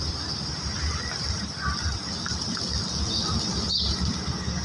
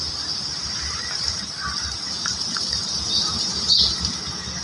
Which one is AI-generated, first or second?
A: second